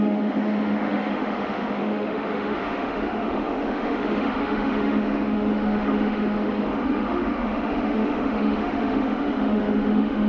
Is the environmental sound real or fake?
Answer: fake